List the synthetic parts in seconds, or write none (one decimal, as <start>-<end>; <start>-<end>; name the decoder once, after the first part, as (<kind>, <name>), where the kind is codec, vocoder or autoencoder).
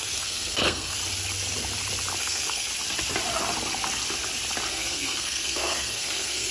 0.0-1.0 (codec, SNAC); 2.2-2.7; 4.7-6.5